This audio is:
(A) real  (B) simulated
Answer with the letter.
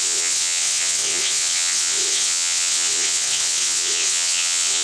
B